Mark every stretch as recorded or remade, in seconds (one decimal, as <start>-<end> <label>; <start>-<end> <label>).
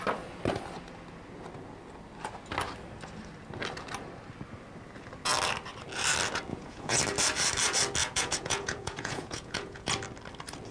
0.0-6.5 recorded; 6.5-7.0 remade; 7.0-8.0 recorded; 8.0-9.9 remade; 9.9-10.7 recorded